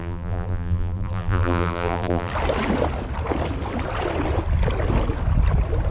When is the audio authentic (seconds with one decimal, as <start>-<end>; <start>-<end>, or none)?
2.3-5.9